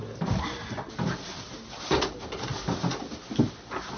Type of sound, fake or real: real